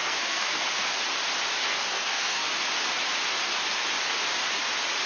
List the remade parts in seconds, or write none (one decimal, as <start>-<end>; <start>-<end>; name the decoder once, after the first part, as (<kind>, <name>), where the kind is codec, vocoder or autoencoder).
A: 0.0-1.0 (codec, SNAC); 1.6-2.5